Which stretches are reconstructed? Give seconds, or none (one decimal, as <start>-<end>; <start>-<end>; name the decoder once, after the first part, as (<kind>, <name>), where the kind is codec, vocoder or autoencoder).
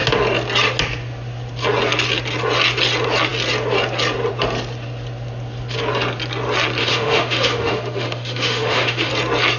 6.8-9.1 (autoencoder, DAC-VAE)